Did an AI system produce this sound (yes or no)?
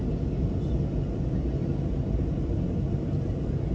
no